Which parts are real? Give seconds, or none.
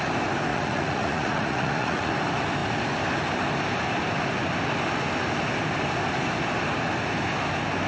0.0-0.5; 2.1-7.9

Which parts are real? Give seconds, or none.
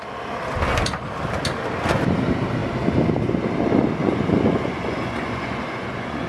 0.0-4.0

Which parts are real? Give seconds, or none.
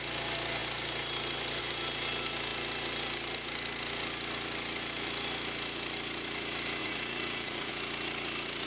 0.0-6.8; 7.7-8.7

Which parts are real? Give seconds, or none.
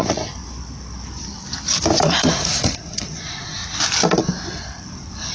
0.4-2.3; 3.6-5.3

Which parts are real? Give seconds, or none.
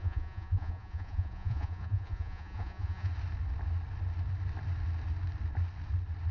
3.1-6.3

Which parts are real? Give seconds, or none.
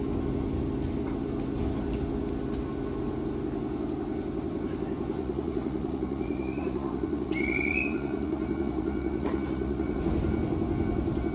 0.0-5.2; 10.0-11.3